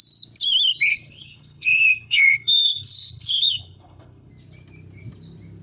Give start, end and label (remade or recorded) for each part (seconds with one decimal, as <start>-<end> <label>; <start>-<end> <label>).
0.0-0.9 recorded; 0.9-4.3 remade; 4.3-5.6 recorded